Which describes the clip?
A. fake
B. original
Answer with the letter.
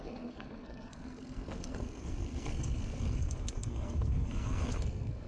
A